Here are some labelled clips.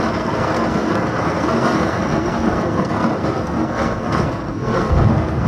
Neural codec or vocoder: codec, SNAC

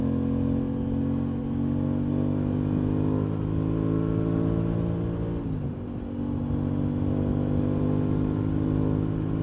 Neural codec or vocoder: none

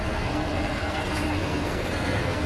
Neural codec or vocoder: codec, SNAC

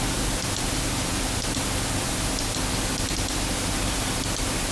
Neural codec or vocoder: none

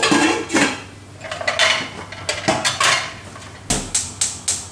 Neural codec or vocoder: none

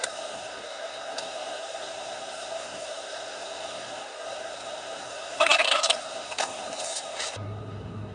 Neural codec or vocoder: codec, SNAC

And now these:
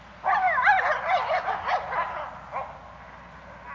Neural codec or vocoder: none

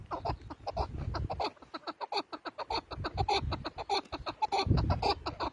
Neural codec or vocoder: none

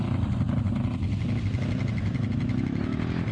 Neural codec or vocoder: none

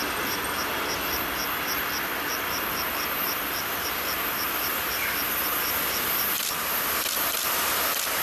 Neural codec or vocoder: none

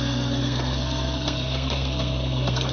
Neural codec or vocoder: codec, SNAC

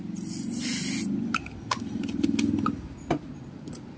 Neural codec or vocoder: none